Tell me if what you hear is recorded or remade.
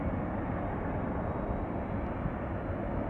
recorded